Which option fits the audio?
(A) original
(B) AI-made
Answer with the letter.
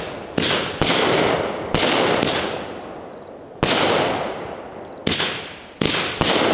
A